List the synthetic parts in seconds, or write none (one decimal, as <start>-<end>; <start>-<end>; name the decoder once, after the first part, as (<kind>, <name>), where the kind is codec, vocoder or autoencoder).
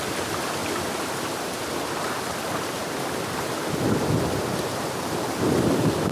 none